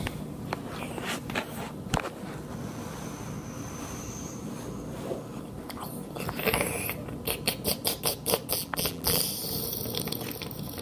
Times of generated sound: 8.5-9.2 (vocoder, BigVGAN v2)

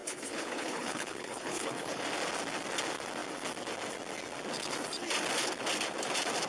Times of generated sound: 0.0-2.0 (codec, HILCodec)

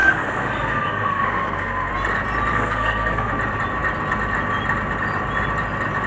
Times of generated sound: 0.0-1.9 (codec, SNAC); 2.5-3.3

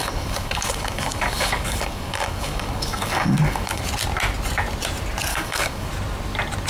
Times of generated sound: 0.0-3.8 (codec, DAC); 5.3-5.9

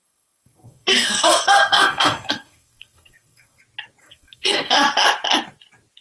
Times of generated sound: 0.0-3.6 (codec, SNAC); 4.0-4.7

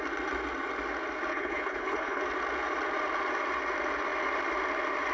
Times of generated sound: 1.3-2.2 (codec, HILCodec)